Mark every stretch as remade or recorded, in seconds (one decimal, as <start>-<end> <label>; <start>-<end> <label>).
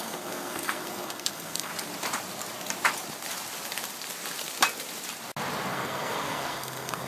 0.0-1.7 remade; 1.7-5.7 recorded; 5.7-7.1 remade